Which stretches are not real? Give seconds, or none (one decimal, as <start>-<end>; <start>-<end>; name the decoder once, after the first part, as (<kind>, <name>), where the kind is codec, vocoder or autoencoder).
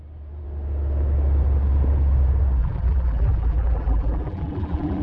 2.6-5.0 (vocoder, BigVGAN v2)